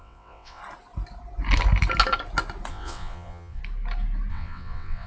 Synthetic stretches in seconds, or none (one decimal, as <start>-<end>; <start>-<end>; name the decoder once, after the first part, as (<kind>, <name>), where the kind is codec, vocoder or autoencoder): 0.0-0.6 (vocoder, WaveNeXt); 2.7-3.6; 4.3-5.1